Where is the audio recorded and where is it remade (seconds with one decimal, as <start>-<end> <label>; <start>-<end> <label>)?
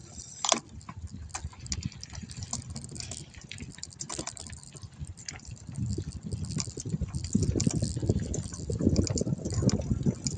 0.0-4.1 recorded; 4.1-5.5 remade; 5.5-10.4 recorded